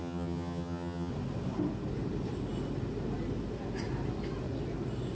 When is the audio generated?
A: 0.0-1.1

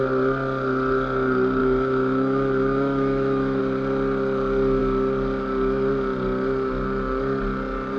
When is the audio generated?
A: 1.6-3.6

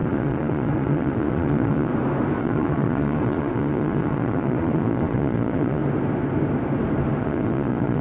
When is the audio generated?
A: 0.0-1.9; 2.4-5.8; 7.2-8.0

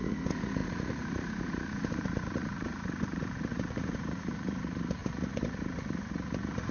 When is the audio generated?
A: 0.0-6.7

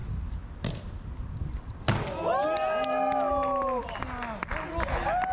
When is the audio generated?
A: none

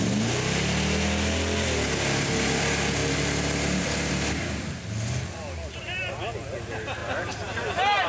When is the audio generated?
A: 3.0-4.1; 7.0-8.1

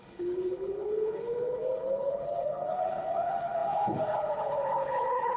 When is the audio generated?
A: 0.0-5.4